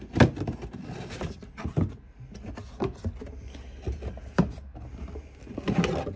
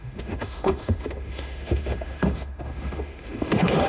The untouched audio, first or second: first